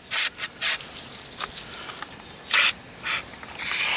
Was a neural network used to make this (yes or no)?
no